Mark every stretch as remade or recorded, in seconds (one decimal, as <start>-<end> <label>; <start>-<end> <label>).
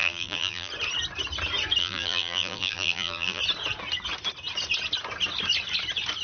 0.0-0.7 remade; 0.7-1.8 recorded; 1.8-3.4 remade; 3.4-6.2 recorded